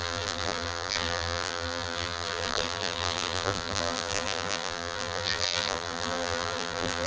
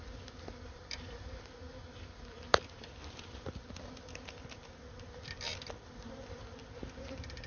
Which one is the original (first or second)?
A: second